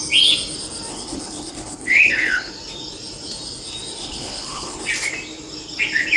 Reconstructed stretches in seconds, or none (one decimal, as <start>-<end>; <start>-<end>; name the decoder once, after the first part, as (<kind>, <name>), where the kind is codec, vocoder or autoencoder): 0.9-2.5 (codec, HILCodec); 4.0-4.9